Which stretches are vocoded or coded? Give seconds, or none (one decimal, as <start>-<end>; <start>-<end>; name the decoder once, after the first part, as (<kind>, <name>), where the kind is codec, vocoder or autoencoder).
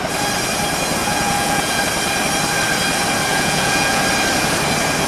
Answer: 1.0-1.8 (vocoder, Vocos); 3.3-4.0